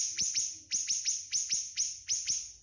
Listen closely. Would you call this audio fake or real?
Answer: real